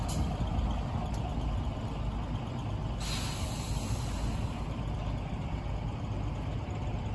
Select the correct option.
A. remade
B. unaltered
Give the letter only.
B